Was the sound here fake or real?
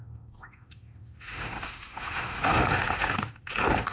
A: fake